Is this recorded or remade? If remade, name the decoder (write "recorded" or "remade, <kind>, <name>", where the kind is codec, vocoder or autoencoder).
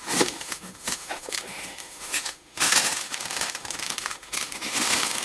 remade, autoencoder, DAC-VAE